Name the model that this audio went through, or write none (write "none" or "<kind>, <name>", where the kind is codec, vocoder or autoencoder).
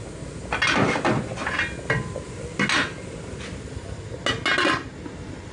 none